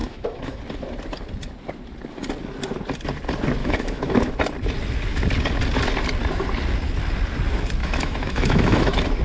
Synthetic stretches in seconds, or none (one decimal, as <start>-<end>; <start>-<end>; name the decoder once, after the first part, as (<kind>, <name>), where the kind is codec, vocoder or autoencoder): 0.0-0.6 (autoencoder, DAC-VAE); 3.6-4.3; 7.8-9.2